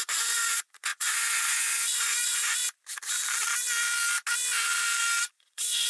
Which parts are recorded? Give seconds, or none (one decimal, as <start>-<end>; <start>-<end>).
2.6-5.3